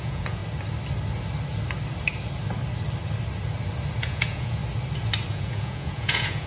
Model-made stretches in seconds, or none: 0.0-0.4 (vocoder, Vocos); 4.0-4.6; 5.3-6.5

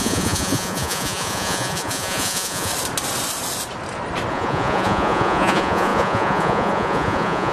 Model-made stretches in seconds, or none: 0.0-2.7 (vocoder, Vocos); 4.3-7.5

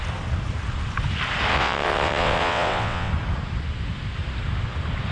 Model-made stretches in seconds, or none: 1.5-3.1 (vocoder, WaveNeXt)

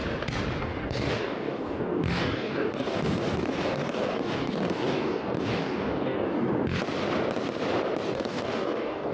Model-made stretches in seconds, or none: 0.6-6.5 (codec, DAC); 8.1-9.1

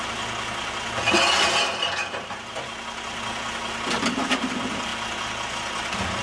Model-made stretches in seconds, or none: none

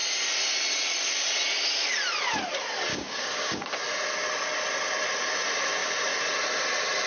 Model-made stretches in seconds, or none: 2.9-3.7 (codec, DAC)

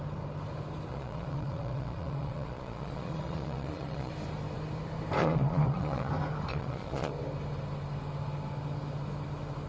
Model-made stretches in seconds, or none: 0.9-4.1 (vocoder, Vocos); 5.2-6.1; 6.5-7.1